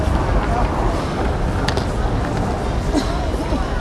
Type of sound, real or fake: real